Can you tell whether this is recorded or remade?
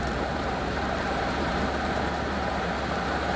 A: remade